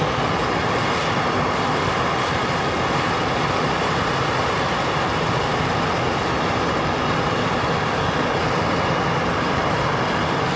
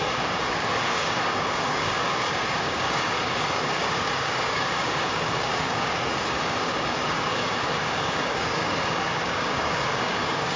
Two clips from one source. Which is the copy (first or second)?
second